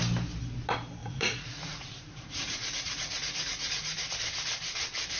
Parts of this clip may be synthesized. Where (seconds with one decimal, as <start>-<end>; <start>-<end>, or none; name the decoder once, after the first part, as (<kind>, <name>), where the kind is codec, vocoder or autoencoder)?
1.0-4.1 (vocoder, Vocos)